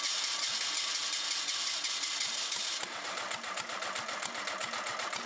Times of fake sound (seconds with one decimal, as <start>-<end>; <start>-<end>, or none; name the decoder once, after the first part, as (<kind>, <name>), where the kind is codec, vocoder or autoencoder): none

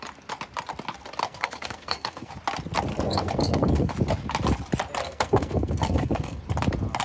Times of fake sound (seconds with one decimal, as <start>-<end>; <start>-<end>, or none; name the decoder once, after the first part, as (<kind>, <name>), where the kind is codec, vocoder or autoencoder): 1.2-2.3 (codec, SNAC); 2.9-3.9; 5.0-6.4

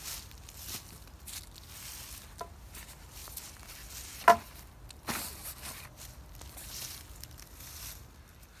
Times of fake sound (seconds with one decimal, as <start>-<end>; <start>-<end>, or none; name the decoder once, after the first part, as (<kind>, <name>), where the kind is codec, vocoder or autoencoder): none

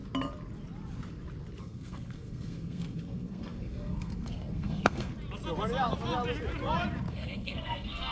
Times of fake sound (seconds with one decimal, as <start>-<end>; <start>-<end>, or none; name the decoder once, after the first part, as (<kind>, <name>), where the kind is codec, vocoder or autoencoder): 1.6-5.1 (codec, SNAC); 7.1-8.1

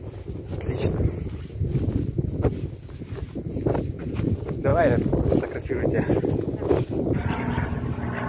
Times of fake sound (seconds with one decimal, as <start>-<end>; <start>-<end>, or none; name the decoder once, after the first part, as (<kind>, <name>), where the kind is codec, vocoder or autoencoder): none